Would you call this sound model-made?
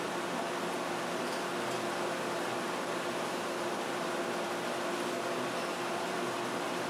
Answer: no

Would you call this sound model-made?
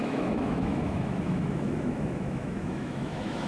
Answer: yes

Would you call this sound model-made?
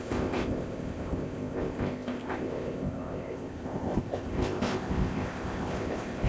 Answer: yes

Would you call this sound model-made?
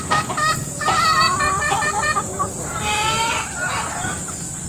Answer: no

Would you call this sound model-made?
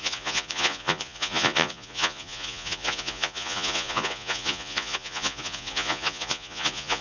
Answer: yes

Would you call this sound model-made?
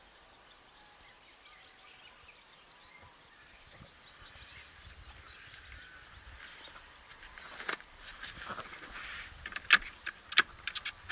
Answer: no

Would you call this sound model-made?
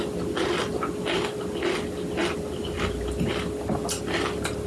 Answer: no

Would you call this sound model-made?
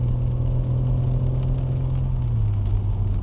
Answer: no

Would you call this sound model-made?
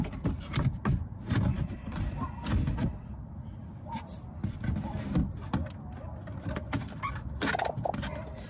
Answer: no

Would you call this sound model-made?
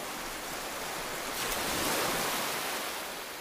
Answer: no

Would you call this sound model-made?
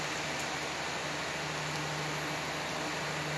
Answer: no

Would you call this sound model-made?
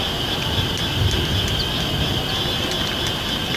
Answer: no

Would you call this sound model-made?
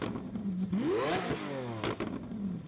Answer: no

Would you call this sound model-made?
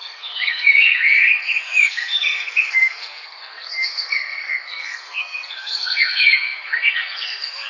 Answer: yes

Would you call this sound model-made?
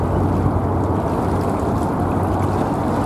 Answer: no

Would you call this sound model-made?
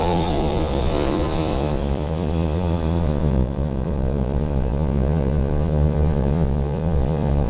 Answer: yes